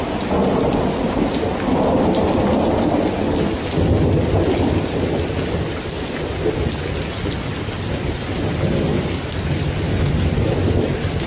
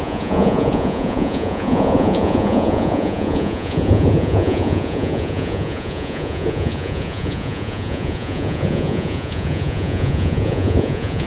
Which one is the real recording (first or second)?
first